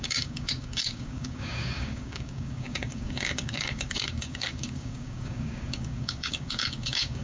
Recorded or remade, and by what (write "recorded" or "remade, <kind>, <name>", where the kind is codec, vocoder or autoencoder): remade, codec, DAC